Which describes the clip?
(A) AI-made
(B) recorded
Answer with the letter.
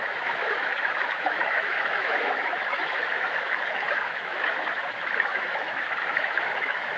A